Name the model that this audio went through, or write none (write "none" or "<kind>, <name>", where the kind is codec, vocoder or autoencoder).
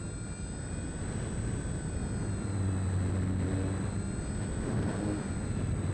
none